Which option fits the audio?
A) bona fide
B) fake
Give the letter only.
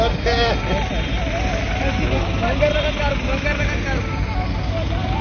A